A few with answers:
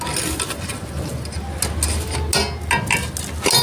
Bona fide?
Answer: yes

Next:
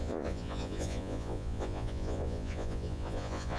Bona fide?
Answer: no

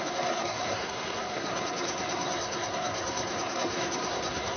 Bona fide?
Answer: no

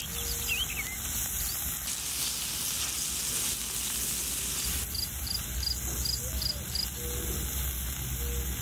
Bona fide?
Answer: yes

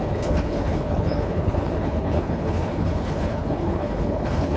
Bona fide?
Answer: no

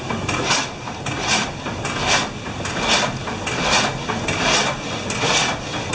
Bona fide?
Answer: yes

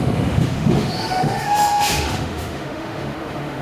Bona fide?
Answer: no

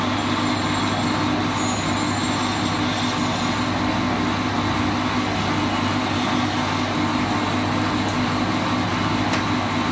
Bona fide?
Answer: yes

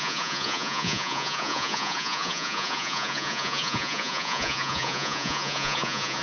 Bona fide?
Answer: no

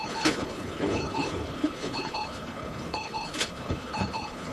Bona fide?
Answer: no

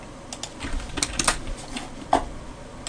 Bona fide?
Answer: yes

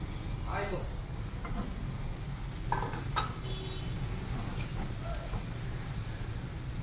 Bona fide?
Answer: yes